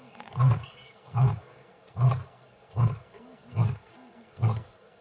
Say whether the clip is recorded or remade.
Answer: remade